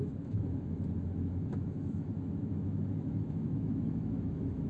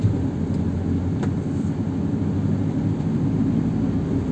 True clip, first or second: second